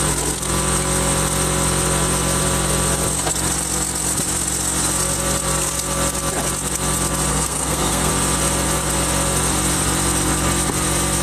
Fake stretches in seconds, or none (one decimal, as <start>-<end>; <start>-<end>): 7.3-8.1